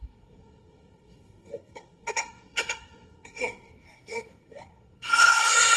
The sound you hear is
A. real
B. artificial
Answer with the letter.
B